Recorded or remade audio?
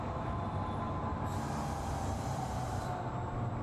recorded